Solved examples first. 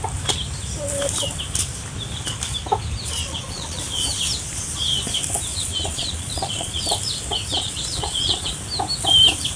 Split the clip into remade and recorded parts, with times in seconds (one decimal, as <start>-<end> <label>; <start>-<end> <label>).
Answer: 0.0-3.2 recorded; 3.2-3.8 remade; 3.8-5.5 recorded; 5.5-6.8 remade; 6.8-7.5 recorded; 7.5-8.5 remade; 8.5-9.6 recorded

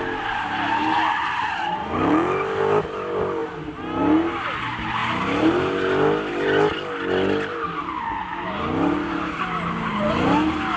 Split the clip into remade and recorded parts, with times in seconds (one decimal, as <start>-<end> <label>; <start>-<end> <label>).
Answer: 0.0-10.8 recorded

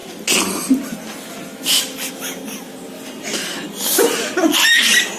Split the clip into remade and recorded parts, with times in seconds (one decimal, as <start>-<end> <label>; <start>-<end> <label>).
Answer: 0.0-5.2 recorded

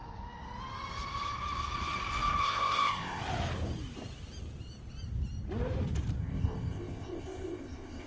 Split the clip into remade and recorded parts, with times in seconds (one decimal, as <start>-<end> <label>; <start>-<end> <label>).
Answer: 0.0-2.4 recorded; 2.4-3.2 remade; 3.2-6.2 recorded; 6.2-8.1 remade

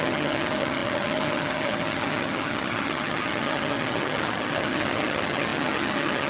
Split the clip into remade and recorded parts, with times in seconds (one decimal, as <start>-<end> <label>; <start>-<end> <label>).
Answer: 0.0-6.3 remade

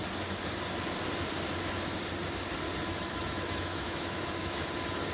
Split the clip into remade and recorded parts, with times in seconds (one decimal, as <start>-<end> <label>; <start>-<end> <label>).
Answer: 0.0-2.9 recorded; 2.9-4.6 remade; 4.6-5.1 recorded

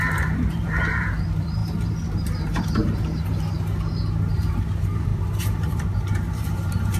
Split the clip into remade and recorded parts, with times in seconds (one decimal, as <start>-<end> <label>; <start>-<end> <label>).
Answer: 0.0-2.8 remade; 2.8-4.2 recorded; 4.2-7.0 remade